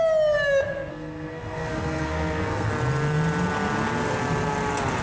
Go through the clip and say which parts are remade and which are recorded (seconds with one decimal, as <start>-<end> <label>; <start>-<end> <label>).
0.0-0.9 recorded; 0.9-2.7 remade; 2.7-5.0 recorded